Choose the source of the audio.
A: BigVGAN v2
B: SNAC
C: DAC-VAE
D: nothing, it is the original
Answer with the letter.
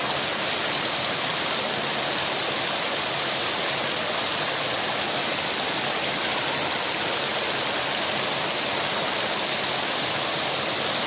D